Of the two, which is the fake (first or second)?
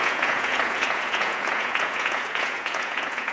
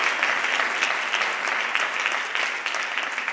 first